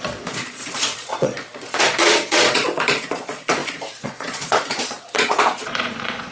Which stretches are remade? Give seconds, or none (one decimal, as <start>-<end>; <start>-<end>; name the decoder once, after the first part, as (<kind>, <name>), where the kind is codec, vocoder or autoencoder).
0.0-6.3 (vocoder, Vocos)